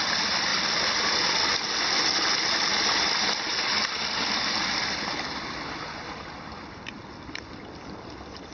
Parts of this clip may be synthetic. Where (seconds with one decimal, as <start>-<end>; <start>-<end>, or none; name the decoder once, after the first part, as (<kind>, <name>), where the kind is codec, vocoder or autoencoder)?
none